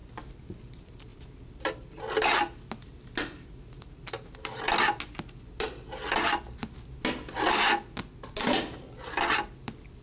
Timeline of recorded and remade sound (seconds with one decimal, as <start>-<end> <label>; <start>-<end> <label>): 0.0-10.0 recorded